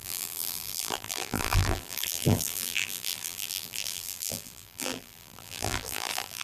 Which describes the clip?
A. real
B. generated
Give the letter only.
B